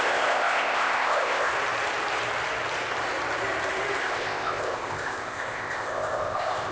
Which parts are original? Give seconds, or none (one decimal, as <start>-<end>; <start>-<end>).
1.5-4.0